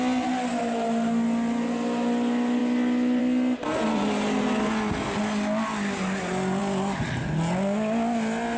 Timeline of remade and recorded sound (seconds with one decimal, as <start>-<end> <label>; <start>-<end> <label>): 0.0-8.6 recorded